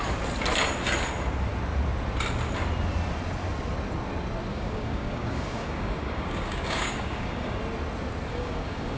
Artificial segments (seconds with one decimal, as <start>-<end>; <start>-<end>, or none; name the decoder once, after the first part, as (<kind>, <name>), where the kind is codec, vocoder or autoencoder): 4.5-7.6 (codec, DAC); 8.3-9.0